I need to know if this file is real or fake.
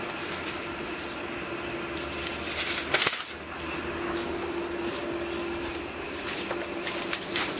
real